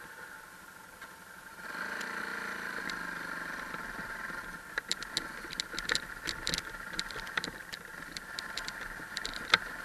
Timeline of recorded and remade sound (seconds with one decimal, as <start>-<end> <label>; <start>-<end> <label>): 0.0-9.8 recorded